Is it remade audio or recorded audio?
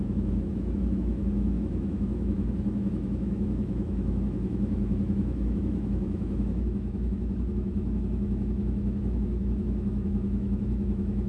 remade